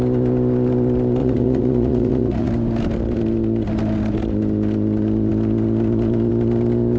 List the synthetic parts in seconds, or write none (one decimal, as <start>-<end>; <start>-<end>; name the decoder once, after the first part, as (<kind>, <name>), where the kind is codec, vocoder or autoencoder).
1.2-2.5 (vocoder, Vocos)